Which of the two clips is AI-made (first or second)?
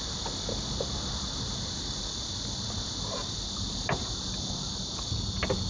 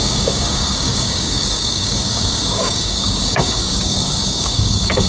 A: second